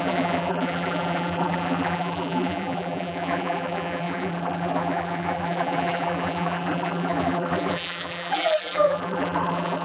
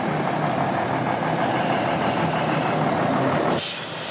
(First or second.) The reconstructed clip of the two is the first